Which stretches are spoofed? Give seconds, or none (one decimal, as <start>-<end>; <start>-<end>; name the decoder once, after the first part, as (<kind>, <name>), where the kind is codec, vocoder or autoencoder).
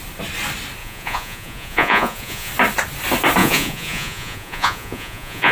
0.8-2.5 (vocoder, Vocos); 3.4-5.5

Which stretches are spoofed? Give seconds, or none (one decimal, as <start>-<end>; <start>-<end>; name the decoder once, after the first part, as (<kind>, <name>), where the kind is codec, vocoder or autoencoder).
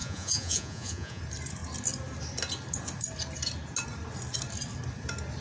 0.0-1.2 (vocoder, Vocos)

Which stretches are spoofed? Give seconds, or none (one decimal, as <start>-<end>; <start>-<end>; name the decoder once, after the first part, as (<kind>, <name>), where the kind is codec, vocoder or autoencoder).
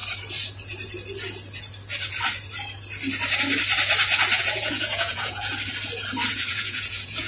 4.4-5.5 (vocoder, Vocos); 6.3-7.3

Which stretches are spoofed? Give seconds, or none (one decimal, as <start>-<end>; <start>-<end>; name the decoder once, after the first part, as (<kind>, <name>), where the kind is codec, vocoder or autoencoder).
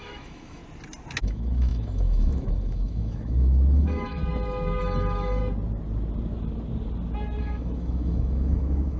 0.0-0.6 (autoencoder, DAC-VAE); 1.2-4.2; 4.8-5.4; 7.4-9.0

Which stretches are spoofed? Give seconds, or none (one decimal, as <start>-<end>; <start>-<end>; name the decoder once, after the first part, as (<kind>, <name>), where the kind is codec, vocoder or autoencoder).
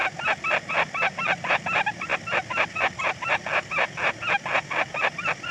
none